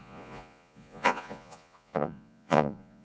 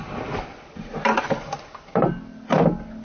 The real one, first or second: second